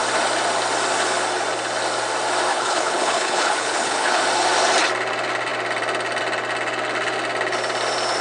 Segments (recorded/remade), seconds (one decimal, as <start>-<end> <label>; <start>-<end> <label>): 0.0-2.5 recorded; 2.5-4.2 remade; 4.2-8.2 recorded